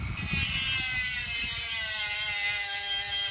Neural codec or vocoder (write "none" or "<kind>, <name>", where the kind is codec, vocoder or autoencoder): none